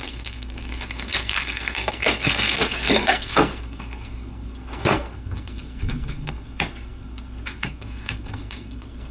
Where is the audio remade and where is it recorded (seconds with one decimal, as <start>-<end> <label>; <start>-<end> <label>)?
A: 0.0-9.1 remade

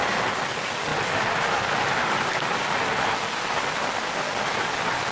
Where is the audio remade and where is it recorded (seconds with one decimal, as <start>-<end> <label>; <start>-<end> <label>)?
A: 0.0-5.1 recorded

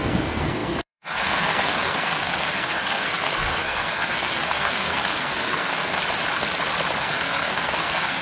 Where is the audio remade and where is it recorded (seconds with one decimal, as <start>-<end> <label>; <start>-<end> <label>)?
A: 0.0-6.0 remade; 6.0-7.0 recorded; 7.0-8.2 remade

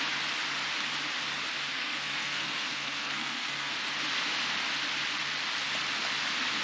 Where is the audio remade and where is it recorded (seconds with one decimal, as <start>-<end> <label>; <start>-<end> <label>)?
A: 0.0-1.7 recorded; 1.7-3.7 remade; 3.7-6.6 recorded

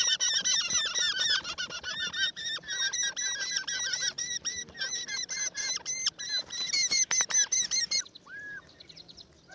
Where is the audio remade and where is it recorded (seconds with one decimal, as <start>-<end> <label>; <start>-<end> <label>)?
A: 0.0-9.5 recorded

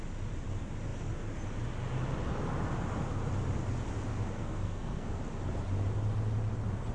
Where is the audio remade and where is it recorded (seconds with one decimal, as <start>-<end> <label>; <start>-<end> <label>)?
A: 0.0-4.1 recorded; 4.1-5.2 remade; 5.2-6.9 recorded

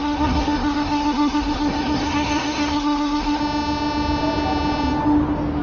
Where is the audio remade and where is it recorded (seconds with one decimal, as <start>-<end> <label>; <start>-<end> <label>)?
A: 0.0-3.4 remade; 3.4-5.6 recorded

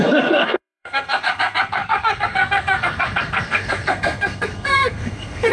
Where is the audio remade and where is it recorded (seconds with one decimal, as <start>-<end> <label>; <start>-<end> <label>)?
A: 0.0-5.5 remade